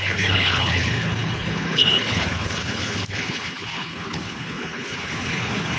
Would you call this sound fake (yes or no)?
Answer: yes